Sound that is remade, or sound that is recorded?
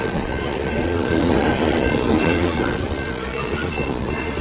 remade